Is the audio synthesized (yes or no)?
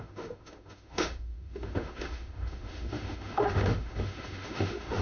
yes